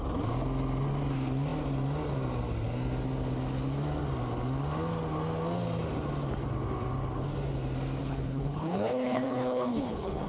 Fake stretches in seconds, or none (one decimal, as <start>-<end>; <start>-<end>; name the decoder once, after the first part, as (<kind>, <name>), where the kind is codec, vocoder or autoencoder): 8.0-10.3 (codec, HILCodec)